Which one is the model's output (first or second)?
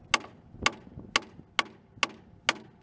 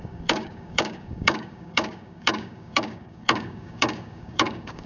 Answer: second